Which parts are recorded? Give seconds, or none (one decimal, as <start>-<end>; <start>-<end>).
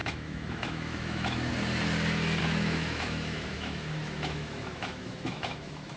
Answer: 1.5-2.4